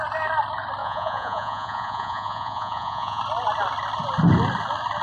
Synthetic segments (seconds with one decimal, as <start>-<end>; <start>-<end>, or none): 0.8-3.2